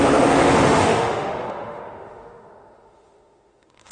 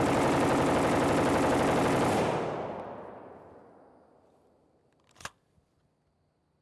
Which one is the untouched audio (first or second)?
second